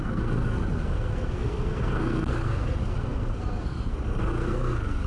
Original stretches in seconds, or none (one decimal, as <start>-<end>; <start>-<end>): none